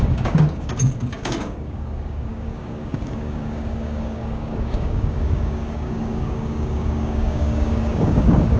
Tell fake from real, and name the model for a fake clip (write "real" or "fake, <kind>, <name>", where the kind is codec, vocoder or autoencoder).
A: fake, codec, DAC